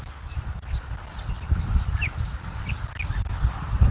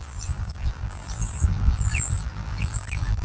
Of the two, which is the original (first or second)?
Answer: first